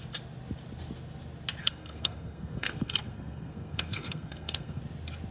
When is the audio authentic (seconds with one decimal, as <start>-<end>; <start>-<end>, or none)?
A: 0.0-1.6; 4.8-5.3

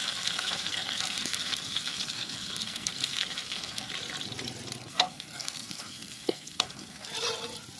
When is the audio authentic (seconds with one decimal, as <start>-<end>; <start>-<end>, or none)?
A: 3.9-4.8; 7.1-7.8

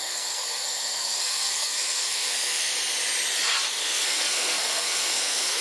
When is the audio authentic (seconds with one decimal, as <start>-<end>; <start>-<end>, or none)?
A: 2.7-3.8